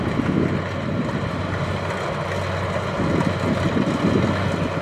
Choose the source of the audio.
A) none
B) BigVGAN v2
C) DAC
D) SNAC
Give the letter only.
A